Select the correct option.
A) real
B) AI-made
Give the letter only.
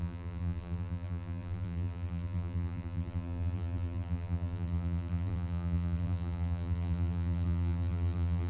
B